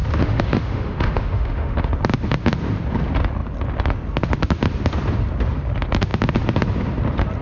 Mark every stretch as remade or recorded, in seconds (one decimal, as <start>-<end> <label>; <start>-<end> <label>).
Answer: 0.0-1.9 remade; 1.9-7.4 recorded